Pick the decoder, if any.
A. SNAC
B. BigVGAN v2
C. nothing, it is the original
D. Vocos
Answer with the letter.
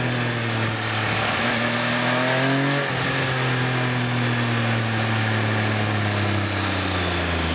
C